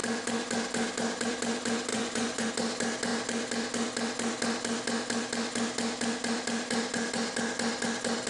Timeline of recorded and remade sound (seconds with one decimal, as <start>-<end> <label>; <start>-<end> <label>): 0.0-1.9 recorded; 1.9-2.5 remade; 2.5-8.3 recorded